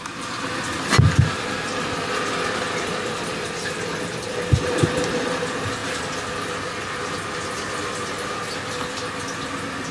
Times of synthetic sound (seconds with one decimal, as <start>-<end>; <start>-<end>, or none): none